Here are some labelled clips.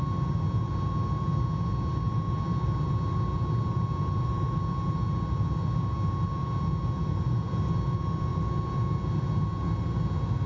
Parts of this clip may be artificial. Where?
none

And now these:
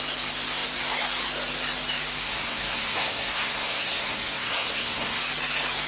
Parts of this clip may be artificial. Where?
2.2-5.2 (codec, SNAC)

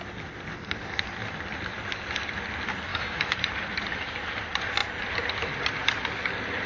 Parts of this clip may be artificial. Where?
2.9-3.5 (autoencoder, DAC-VAE)

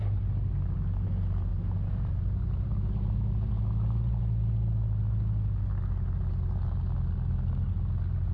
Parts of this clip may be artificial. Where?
1.5-3.5 (vocoder, BigVGAN v2)

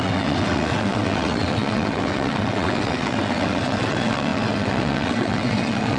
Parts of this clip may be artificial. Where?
0.0-6.0 (vocoder, WaveNeXt)